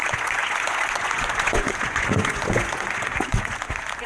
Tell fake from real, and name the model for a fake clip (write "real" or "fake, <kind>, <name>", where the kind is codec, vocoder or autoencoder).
fake, vocoder, Vocos